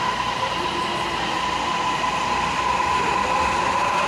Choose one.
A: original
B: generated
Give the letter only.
A